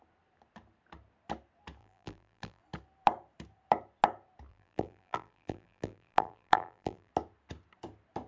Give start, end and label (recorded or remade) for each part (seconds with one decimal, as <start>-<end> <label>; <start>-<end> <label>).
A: 0.0-1.8 recorded; 1.8-2.6 remade; 2.6-4.5 recorded; 4.5-7.1 remade; 7.1-8.3 recorded